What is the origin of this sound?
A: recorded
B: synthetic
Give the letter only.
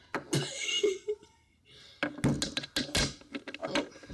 A